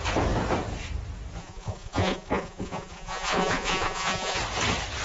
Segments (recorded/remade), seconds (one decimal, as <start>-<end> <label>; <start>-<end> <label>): 0.0-1.4 recorded; 1.4-4.4 remade; 4.4-5.0 recorded